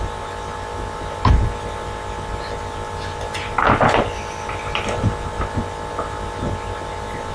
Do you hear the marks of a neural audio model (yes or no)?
no